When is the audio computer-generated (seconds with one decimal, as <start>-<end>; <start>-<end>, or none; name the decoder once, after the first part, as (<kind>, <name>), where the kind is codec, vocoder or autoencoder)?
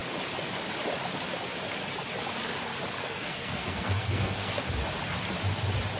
3.0-4.7 (codec, SNAC)